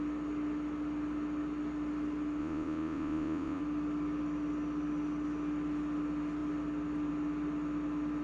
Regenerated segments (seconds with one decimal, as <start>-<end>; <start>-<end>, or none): 2.4-3.6

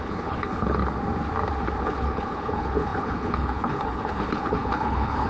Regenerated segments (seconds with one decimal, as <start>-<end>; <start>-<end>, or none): 0.0-0.8; 1.8-5.3

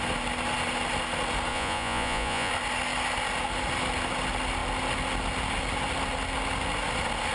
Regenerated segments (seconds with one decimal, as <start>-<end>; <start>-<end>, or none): 1.5-2.5

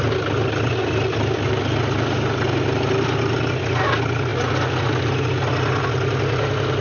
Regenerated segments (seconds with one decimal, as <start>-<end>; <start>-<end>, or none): none

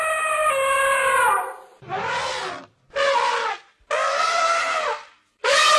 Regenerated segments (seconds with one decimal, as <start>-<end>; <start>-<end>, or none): none

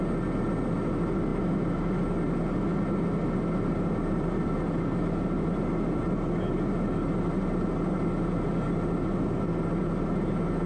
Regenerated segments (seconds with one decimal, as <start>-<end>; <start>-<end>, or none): none

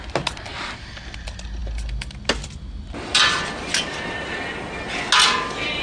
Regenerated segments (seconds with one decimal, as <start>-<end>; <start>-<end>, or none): none

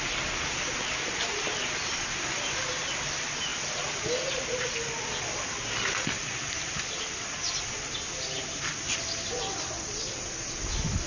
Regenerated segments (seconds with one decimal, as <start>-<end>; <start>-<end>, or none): none